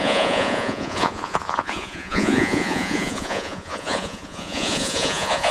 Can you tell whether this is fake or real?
fake